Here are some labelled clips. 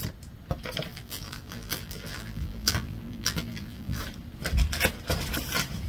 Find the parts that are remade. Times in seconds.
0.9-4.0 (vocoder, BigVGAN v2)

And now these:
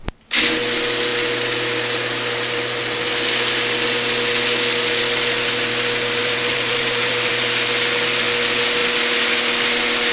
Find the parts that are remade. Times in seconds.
6.2-7.3 (vocoder, BigVGAN v2)